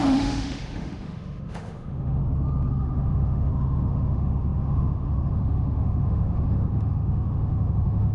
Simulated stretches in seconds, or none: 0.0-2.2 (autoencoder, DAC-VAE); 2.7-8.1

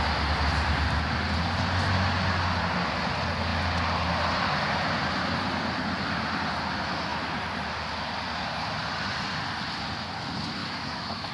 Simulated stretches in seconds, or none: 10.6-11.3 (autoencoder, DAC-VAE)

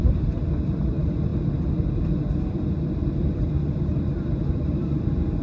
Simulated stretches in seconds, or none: none

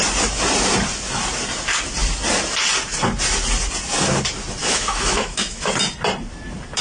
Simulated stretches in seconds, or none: 4.6-5.7 (autoencoder, DAC-VAE)

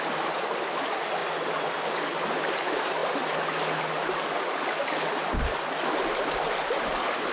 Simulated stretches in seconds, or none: none

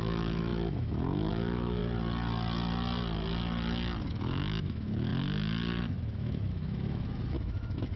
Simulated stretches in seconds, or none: 0.0-1.8 (autoencoder, DAC-VAE); 4.1-5.1; 5.8-8.0